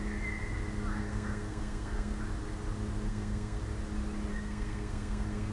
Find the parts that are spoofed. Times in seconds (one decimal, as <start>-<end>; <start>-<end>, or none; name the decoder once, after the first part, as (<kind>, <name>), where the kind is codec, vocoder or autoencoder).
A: 0.9-2.2 (codec, SNAC); 3.1-3.6; 4.3-5.5